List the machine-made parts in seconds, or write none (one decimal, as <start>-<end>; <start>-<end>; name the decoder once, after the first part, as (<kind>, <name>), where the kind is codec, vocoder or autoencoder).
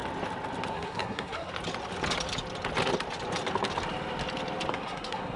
0.7-1.5 (codec, SNAC); 4.7-5.4